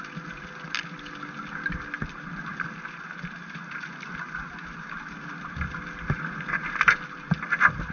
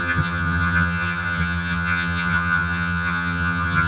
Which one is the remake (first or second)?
second